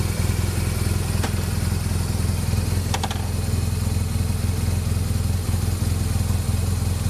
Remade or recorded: recorded